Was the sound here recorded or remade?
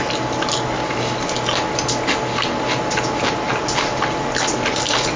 recorded